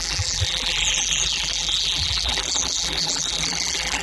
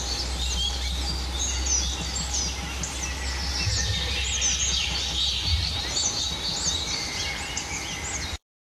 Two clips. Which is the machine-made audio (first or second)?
first